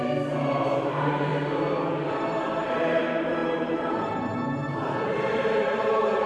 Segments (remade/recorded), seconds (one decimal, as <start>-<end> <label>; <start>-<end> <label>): 0.0-1.3 remade; 1.3-2.1 recorded; 2.1-6.3 remade